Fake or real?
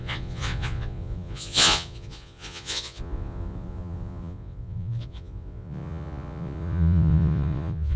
fake